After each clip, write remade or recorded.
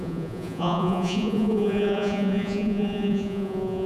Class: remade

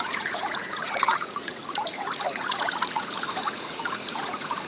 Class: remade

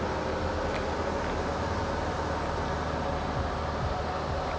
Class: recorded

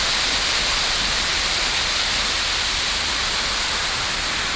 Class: recorded